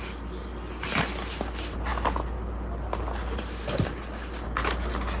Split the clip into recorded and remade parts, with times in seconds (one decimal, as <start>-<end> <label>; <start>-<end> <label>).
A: 0.0-5.2 recorded